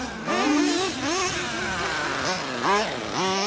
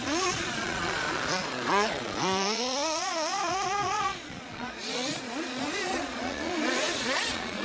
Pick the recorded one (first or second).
first